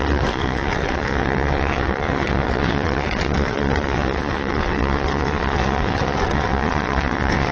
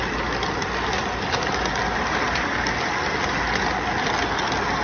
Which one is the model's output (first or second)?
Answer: first